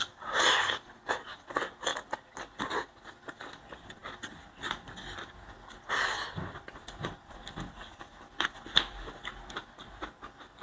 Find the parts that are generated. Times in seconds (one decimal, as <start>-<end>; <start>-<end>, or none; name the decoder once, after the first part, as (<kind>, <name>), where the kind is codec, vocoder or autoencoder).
none